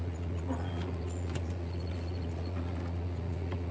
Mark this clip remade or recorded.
remade